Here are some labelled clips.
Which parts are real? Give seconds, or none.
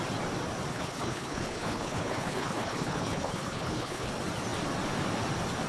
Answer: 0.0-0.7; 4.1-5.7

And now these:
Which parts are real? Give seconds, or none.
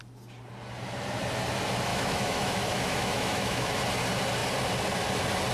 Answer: 0.0-1.9; 3.7-5.5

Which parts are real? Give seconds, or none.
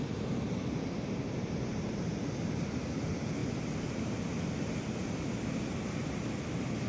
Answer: 0.0-6.9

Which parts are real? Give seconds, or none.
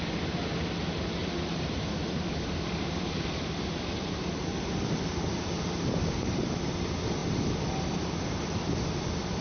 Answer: 0.0-1.2; 6.4-9.4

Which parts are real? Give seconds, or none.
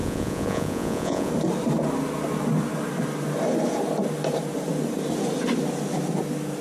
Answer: 1.3-6.6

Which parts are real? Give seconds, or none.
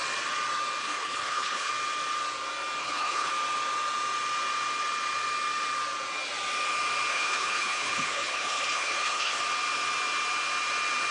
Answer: 0.0-0.8; 1.7-2.8; 3.3-7.1; 9.4-11.1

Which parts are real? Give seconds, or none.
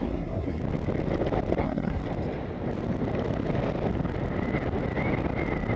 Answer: 0.6-1.6; 2.0-5.8